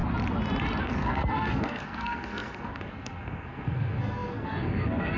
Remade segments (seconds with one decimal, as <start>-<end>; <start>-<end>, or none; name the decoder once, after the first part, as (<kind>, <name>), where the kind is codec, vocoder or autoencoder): 0.8-5.2 (codec, SNAC)